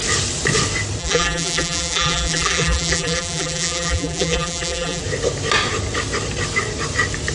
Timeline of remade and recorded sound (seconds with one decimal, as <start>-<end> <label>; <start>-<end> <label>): 0.0-1.0 recorded; 1.0-5.0 remade; 5.0-7.3 recorded

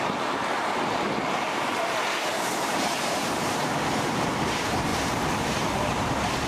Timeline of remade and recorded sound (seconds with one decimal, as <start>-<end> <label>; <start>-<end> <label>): 0.0-6.5 remade